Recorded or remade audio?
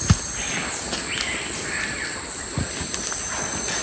recorded